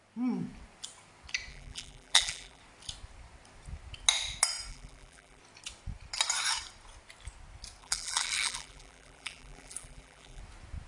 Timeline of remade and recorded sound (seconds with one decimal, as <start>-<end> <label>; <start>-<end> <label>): 0.0-1.5 recorded; 1.5-2.6 remade; 2.6-4.7 recorded; 4.7-5.4 remade; 5.4-7.8 recorded; 7.8-10.4 remade; 10.4-10.9 recorded